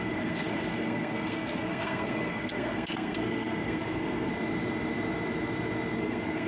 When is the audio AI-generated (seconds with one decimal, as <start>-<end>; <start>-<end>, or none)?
0.0-4.3; 6.0-6.5